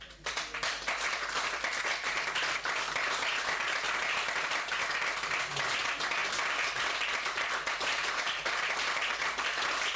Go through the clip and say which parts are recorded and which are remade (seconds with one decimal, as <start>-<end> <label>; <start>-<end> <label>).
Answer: 0.0-10.0 remade